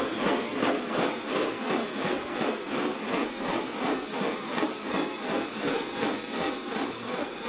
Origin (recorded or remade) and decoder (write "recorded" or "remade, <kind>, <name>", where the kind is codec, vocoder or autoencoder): remade, codec, SNAC